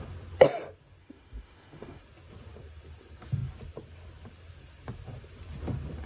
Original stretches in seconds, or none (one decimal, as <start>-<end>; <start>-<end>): 0.0-1.0; 2.0-6.1

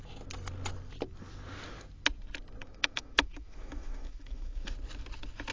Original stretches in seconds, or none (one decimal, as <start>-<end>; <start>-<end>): 0.0-2.6; 4.7-5.5

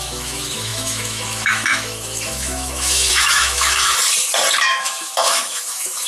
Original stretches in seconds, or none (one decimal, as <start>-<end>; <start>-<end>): 3.9-4.6

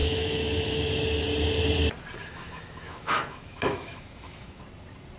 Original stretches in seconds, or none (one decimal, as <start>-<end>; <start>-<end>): 0.9-2.2; 4.6-5.2

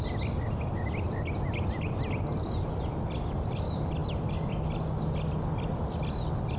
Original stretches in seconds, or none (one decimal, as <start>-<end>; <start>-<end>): 0.0-6.6

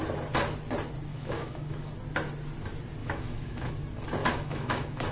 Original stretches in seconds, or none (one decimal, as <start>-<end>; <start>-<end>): 0.0-1.1; 1.9-3.0; 3.7-4.2

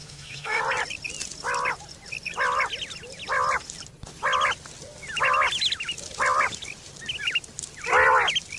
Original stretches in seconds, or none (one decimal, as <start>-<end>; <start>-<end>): 0.6-8.6